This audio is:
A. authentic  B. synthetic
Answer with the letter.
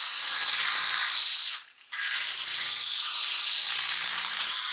B